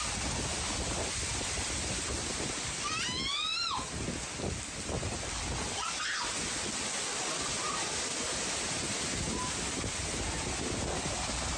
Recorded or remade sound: recorded